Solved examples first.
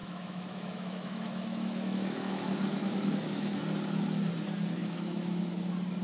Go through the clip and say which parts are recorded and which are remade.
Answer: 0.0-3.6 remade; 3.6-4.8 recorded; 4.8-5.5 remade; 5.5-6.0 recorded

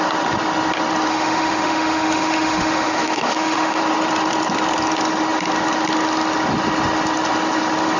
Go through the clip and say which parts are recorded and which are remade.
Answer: 0.0-1.1 recorded; 1.1-3.8 remade; 3.8-8.0 recorded

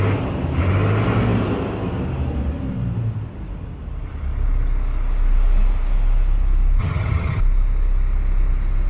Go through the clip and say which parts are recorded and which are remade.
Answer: 0.0-6.8 recorded; 6.8-7.4 remade; 7.4-8.9 recorded

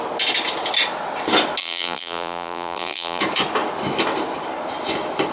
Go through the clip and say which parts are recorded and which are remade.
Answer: 0.0-1.6 recorded; 1.6-3.2 remade; 3.2-5.3 recorded

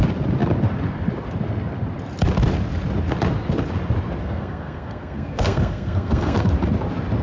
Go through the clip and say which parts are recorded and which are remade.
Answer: 0.0-4.2 recorded; 4.2-6.5 remade; 6.5-7.2 recorded